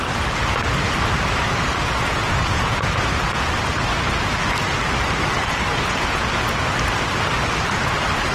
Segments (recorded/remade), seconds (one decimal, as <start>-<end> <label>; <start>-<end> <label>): 0.0-1.7 recorded; 1.7-3.5 remade; 3.5-5.7 recorded; 5.7-6.3 remade; 6.3-8.3 recorded